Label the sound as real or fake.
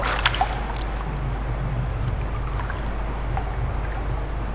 real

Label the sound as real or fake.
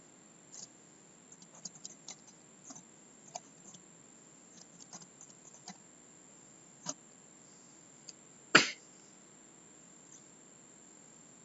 real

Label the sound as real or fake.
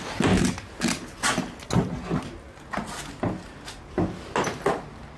real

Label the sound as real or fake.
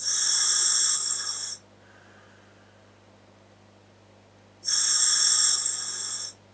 real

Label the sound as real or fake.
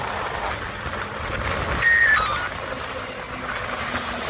real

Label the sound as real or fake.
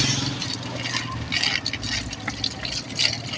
real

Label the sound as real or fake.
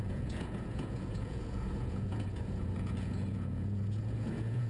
fake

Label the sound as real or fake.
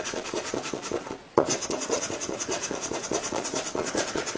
fake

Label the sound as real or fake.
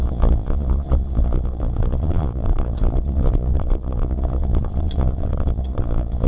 fake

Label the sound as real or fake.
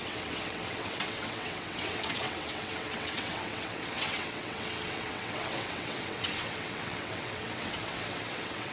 fake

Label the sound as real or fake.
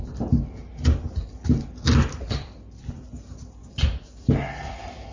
real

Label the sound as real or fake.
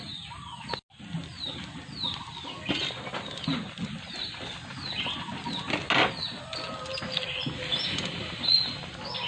real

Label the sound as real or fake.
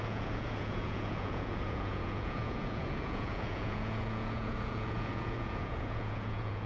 fake